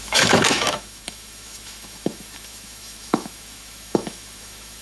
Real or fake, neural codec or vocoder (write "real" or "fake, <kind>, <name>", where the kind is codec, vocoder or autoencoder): fake, autoencoder, DAC-VAE